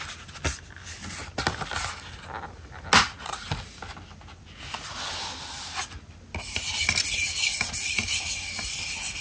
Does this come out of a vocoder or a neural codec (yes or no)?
no